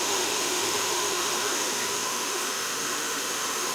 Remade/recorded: remade